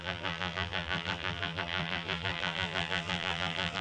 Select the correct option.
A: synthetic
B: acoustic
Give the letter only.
A